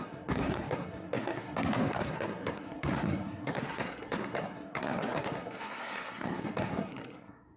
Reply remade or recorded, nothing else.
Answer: remade